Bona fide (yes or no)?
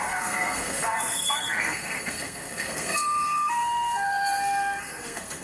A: no